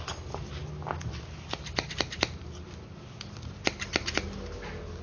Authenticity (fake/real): real